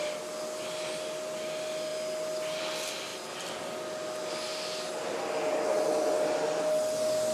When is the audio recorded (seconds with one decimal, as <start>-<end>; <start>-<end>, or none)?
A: 0.0-7.3